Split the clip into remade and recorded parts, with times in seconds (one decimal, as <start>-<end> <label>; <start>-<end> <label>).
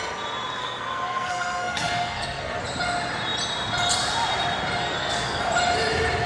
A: 0.0-0.6 recorded; 0.6-2.6 remade; 2.6-4.8 recorded; 4.8-5.4 remade; 5.4-6.3 recorded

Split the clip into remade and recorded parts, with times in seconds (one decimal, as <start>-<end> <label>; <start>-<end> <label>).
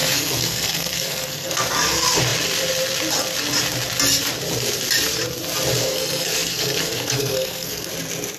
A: 0.0-1.7 remade; 1.7-5.8 recorded; 5.8-7.9 remade; 7.9-8.4 recorded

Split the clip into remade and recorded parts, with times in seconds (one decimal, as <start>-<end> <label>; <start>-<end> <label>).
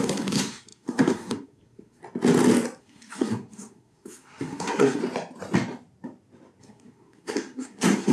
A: 0.0-2.0 remade; 2.0-2.8 recorded; 2.8-5.0 remade; 5.0-6.6 recorded; 6.6-8.1 remade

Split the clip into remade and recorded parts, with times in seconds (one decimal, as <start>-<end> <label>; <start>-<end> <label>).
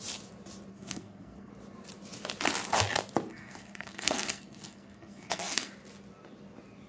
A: 0.0-0.7 recorded; 0.7-1.5 remade; 1.5-3.3 recorded; 3.3-5.7 remade; 5.7-6.9 recorded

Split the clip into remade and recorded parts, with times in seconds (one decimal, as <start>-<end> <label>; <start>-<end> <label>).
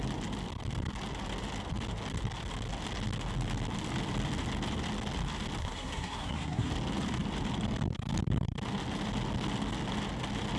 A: 0.0-5.6 recorded; 5.6-6.7 remade; 6.7-10.6 recorded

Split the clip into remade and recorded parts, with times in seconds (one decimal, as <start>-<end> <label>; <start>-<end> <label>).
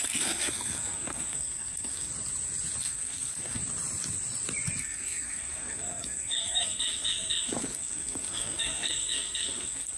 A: 0.0-2.1 remade; 2.1-2.8 recorded; 2.8-3.6 remade; 3.6-4.8 recorded; 4.8-10.0 remade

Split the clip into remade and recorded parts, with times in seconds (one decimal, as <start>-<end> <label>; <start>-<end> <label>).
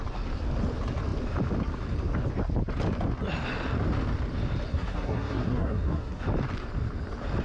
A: 0.0-4.7 recorded; 4.7-6.2 remade; 6.2-7.4 recorded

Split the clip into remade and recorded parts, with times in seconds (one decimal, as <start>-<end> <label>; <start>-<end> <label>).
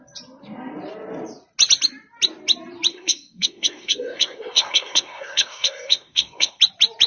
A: 0.0-2.9 recorded; 2.9-6.6 remade; 6.6-7.1 recorded